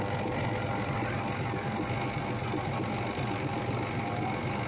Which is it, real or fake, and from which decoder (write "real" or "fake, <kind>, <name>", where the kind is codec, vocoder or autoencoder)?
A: real